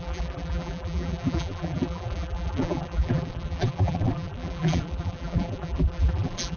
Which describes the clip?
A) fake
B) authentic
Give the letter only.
A